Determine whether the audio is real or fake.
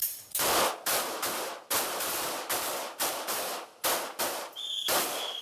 fake